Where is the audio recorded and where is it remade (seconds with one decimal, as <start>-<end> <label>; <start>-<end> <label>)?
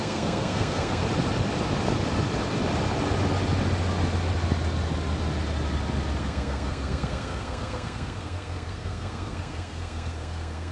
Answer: 0.0-1.0 remade; 1.0-6.2 recorded; 6.2-10.7 remade